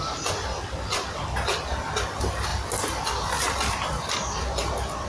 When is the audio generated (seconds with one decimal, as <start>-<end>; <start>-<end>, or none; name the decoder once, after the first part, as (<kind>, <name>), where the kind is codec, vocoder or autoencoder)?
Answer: none